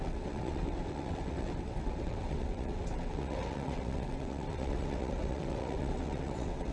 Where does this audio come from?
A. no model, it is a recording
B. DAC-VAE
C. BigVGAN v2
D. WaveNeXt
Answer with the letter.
D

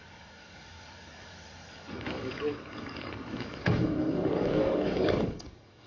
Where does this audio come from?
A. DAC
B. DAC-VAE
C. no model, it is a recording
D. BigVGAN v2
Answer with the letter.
A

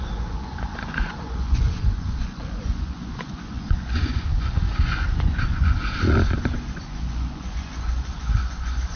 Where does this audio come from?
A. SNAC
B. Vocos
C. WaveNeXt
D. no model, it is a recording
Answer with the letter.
B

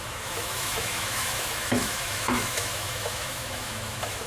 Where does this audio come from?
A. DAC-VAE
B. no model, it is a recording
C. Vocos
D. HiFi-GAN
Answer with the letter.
A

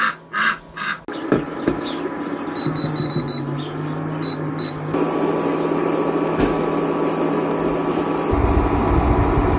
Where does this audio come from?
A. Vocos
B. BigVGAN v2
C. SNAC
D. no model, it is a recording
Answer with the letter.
D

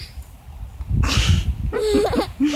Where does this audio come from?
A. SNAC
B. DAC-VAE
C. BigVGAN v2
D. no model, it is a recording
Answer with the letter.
D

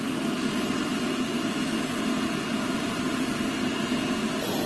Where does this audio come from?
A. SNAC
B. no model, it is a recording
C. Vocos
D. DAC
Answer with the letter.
B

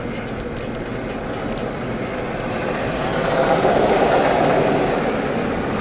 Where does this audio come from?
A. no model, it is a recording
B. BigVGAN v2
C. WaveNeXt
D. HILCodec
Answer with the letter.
A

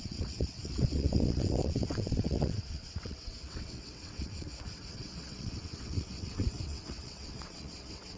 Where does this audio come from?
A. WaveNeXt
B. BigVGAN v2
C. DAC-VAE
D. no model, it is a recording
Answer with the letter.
A